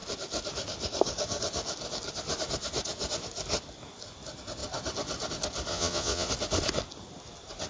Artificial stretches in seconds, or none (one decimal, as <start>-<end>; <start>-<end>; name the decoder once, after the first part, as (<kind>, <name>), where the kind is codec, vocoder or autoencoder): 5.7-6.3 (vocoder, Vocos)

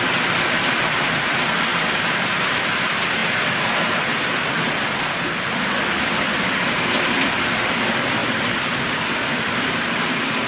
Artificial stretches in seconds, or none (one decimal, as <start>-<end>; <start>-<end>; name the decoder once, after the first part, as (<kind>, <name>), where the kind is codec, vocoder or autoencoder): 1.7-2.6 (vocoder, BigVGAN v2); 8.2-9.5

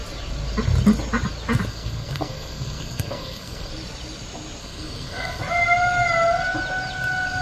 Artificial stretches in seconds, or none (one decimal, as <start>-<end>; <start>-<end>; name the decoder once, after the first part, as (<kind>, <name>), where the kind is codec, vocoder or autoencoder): 1.7-3.7 (codec, SNAC); 4.6-5.4

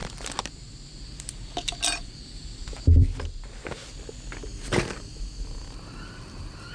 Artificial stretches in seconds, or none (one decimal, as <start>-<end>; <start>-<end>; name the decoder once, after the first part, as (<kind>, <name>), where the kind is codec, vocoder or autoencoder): none

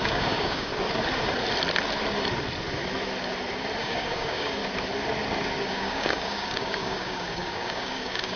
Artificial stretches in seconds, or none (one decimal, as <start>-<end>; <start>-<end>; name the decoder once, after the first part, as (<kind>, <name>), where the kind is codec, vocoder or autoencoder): 0.0-0.7 (codec, DAC); 3.8-4.6; 5.7-8.4

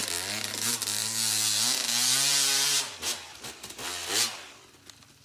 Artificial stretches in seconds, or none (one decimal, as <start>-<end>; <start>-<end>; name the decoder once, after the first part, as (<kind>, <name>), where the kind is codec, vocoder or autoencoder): none